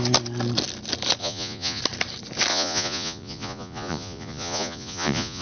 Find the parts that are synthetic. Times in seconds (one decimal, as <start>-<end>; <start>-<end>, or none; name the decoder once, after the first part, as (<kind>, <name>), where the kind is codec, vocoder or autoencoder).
1.2-1.8 (vocoder, Vocos); 2.5-5.4